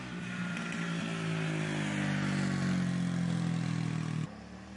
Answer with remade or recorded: recorded